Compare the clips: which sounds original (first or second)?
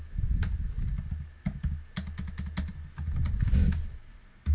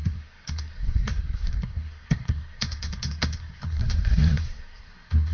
first